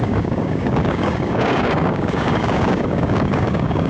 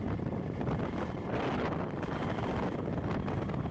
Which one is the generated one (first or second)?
first